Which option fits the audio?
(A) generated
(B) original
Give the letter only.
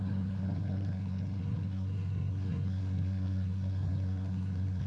A